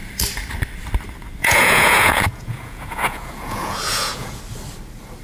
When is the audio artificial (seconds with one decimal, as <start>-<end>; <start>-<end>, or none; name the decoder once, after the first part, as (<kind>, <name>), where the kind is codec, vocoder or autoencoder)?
1.4-4.4 (vocoder, Vocos)